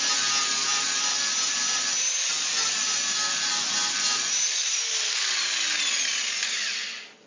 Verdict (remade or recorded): recorded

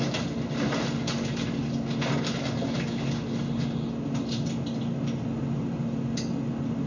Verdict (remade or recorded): recorded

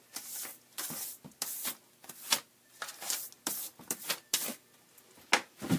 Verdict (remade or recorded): recorded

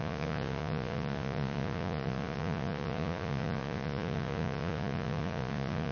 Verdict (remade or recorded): remade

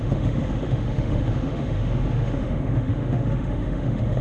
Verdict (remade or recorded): remade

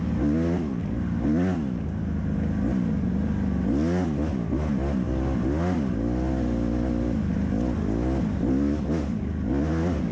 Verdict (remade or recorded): recorded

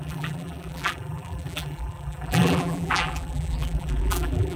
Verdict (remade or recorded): remade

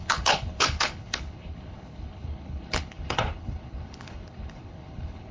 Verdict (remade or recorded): remade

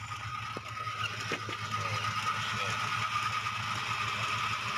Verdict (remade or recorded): recorded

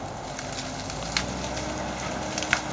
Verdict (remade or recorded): recorded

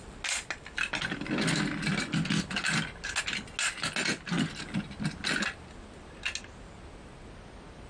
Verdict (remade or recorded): recorded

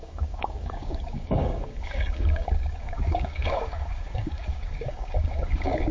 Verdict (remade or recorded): remade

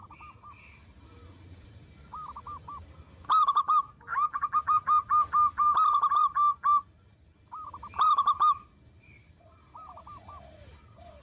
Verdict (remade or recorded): recorded